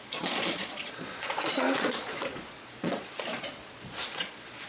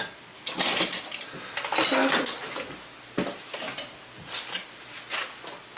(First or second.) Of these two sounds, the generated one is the first